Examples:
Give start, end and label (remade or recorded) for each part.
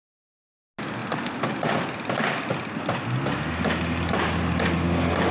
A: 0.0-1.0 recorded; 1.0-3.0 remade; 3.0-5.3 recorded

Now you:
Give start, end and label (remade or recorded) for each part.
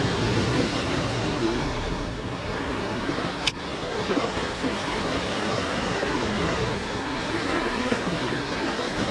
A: 0.0-9.1 remade